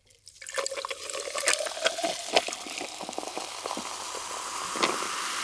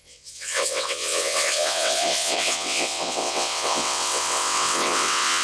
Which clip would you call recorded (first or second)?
first